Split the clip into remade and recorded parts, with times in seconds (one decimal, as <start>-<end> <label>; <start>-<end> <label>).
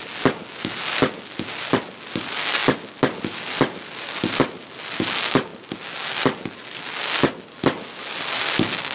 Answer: 0.0-8.9 recorded